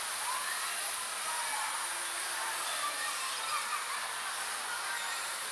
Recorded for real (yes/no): yes